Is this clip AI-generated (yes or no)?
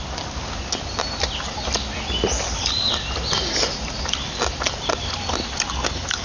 no